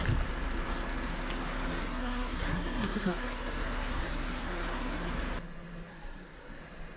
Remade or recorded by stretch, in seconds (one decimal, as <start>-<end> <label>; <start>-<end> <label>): 0.0-1.8 recorded; 1.8-5.1 remade; 5.1-5.9 recorded; 5.9-6.6 remade; 6.6-7.0 recorded